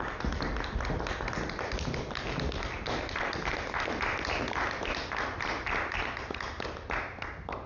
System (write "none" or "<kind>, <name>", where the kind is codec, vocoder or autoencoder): none